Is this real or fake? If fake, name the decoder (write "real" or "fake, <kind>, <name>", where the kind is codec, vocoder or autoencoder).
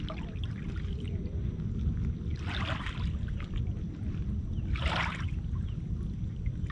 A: real